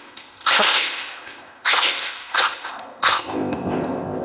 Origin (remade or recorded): remade